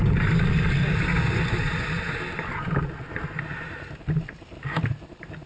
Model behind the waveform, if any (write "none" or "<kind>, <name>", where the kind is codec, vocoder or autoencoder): none